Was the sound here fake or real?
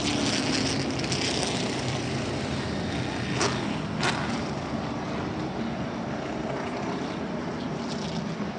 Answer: real